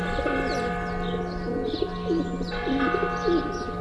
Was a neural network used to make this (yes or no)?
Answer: no